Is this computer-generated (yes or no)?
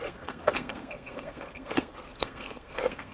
yes